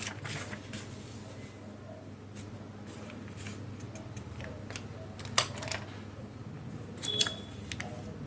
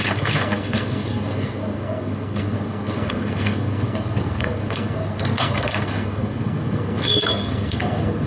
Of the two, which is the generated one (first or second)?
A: second